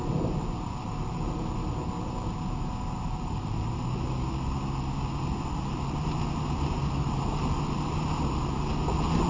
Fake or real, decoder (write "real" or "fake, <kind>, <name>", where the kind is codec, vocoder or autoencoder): real